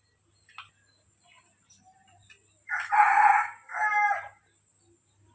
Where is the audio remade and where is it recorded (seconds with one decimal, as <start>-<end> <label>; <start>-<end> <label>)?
0.0-5.3 recorded